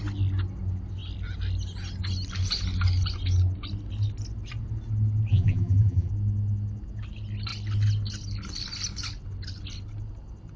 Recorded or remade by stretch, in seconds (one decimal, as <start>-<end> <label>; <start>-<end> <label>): 0.0-5.3 recorded; 5.3-6.1 remade; 6.1-10.6 recorded